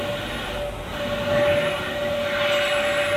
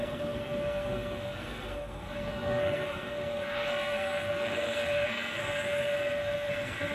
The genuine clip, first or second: first